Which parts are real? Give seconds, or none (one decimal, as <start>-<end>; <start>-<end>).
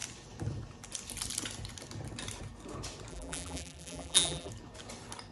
0.0-3.1; 4.5-5.3